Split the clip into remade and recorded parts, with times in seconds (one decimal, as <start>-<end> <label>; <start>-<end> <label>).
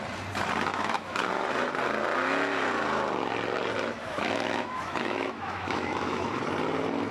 0.0-0.7 recorded; 0.7-1.3 remade; 1.3-4.0 recorded; 4.0-6.4 remade; 6.4-7.1 recorded